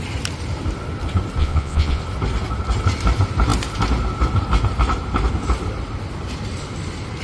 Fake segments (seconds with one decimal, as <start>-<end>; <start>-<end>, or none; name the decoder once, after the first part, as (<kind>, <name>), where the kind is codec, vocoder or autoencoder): 1.4-2.0 (vocoder, Vocos)